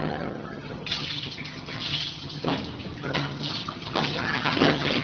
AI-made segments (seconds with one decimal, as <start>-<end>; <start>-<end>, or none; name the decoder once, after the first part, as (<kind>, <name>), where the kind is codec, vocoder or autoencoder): 0.0-2.5 (vocoder, HiFi-GAN); 3.0-5.0